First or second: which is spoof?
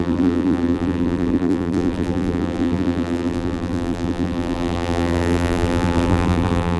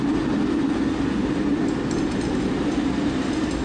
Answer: first